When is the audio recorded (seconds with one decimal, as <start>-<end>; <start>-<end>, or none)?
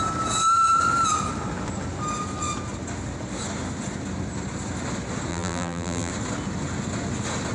0.0-5.3; 6.1-7.5